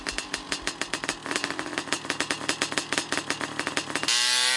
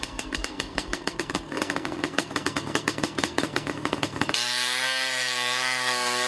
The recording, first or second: first